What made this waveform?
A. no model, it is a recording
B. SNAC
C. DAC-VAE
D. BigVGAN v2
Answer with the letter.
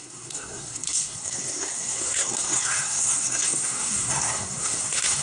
B